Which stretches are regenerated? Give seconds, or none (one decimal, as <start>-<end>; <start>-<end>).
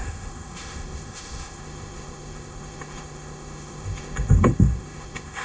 0.0-5.4